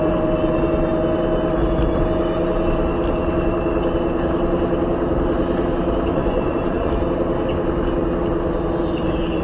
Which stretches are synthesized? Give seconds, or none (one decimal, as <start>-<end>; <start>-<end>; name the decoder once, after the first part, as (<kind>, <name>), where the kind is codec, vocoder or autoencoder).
6.1-6.9 (vocoder, Vocos)